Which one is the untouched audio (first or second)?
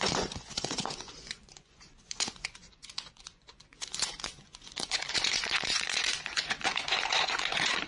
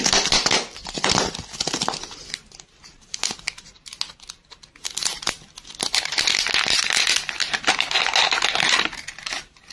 second